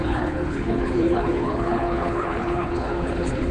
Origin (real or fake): fake